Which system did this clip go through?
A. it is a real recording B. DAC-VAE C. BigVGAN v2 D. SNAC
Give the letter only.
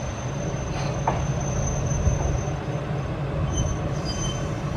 A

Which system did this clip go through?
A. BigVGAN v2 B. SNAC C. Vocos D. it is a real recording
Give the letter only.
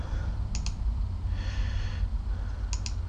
D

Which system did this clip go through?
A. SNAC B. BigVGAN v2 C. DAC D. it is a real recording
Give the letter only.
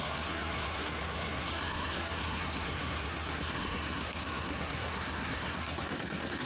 A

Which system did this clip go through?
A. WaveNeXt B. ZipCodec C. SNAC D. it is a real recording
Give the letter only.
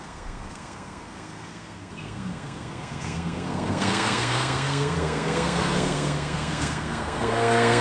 C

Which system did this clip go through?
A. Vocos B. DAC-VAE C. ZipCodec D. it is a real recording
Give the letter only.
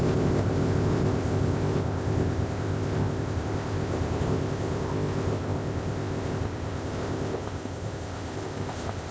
C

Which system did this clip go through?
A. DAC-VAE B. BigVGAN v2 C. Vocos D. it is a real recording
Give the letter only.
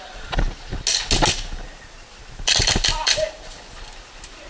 D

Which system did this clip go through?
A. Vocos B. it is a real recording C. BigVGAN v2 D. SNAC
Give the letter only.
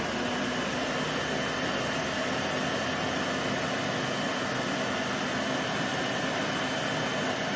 B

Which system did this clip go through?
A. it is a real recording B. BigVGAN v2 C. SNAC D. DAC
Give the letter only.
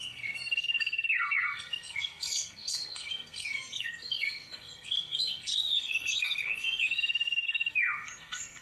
C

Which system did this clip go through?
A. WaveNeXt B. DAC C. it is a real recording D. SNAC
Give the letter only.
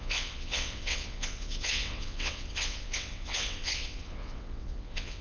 A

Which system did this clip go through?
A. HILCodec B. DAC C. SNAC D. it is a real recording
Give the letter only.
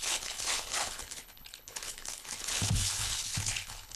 A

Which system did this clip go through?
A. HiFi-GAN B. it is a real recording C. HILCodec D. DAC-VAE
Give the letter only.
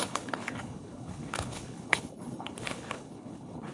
C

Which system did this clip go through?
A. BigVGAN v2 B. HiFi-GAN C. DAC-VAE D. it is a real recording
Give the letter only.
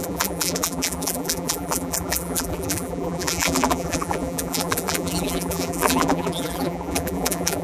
A